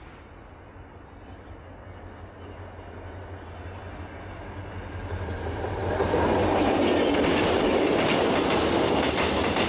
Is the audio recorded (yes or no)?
yes